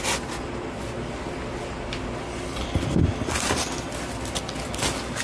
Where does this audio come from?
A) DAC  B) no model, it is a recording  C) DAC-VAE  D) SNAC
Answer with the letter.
B